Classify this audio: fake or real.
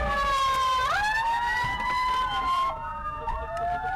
fake